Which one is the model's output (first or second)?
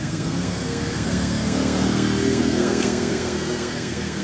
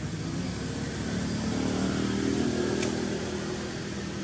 first